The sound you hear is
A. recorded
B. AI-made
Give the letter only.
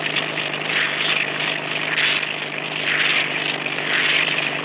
A